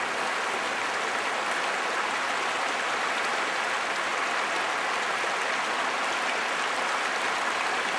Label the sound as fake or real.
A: real